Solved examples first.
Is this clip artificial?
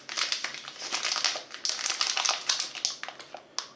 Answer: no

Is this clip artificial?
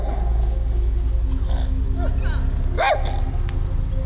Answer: no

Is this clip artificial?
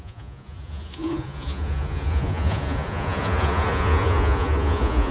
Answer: yes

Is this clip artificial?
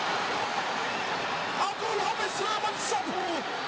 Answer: yes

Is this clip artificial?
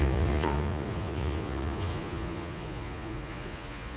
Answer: yes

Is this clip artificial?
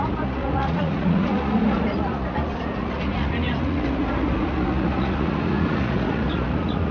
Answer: yes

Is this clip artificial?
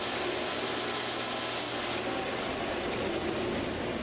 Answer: no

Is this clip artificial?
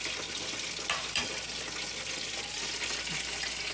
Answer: no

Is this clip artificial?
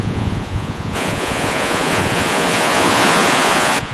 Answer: yes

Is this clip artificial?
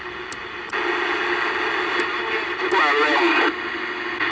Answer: no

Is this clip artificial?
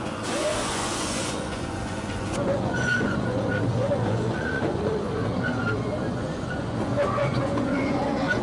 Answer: yes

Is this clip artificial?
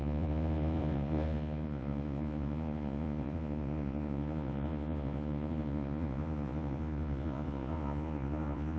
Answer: yes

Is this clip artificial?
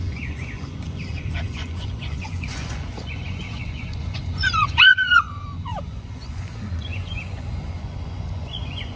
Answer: yes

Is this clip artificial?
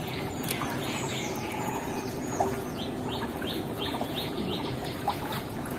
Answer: yes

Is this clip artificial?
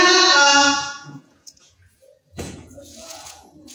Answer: yes